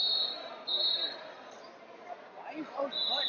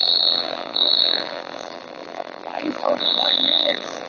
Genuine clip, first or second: first